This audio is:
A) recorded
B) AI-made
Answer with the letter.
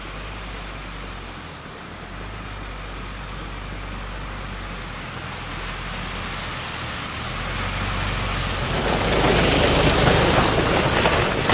A